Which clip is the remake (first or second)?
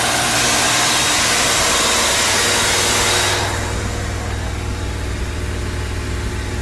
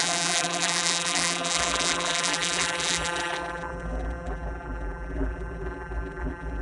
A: second